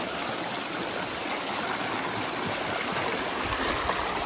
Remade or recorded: recorded